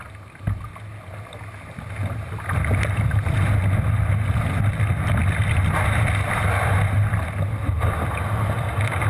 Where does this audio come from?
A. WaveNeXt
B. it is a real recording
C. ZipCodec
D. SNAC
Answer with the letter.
B